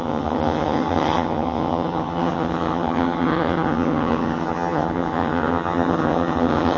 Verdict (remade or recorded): remade